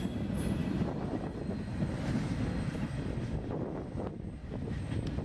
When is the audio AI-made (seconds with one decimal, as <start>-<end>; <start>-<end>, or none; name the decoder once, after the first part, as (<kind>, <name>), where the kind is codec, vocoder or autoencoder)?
0.6-2.2 (vocoder, BigVGAN v2); 4.4-5.2